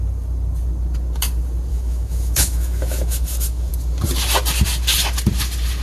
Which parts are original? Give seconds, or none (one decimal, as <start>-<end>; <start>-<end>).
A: 0.0-1.7; 3.7-5.8